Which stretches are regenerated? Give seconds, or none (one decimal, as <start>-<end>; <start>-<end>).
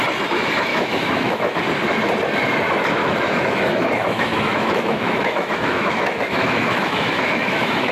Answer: 0.7-1.6; 3.0-7.9